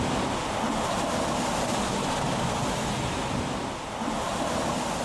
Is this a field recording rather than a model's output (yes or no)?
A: yes